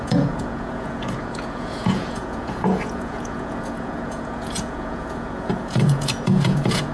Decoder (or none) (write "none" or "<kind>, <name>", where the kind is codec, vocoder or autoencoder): vocoder, Vocos